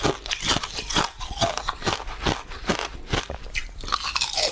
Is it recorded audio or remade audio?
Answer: recorded